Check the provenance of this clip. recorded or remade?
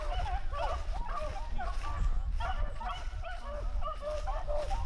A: recorded